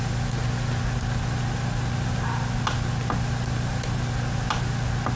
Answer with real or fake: real